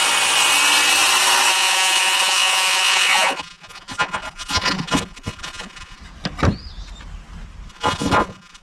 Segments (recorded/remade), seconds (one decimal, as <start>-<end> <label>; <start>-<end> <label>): 0.0-1.5 recorded; 1.5-6.0 remade; 6.0-7.7 recorded; 7.7-8.6 remade